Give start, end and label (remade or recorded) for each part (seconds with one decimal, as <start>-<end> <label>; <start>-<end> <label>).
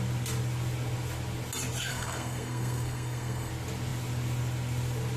0.0-1.9 recorded; 1.9-3.5 remade; 3.5-5.2 recorded